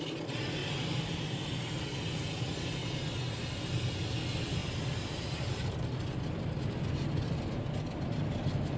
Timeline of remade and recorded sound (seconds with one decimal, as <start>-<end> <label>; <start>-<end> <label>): 0.0-0.6 recorded; 0.6-1.8 remade; 1.8-4.6 recorded; 4.6-5.4 remade; 5.4-8.8 recorded